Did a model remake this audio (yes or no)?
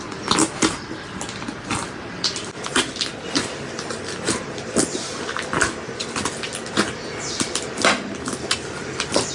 no